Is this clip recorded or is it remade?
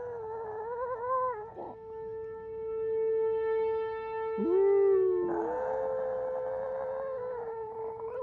recorded